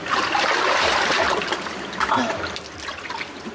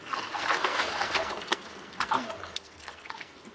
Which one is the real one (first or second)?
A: first